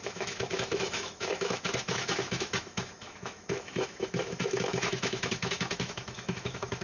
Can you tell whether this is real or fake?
fake